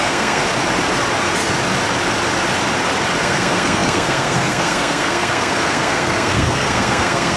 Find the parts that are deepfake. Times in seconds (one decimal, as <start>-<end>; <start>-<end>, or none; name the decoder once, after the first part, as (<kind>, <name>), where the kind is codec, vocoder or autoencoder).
0.0-0.4 (codec, SNAC); 3.2-7.4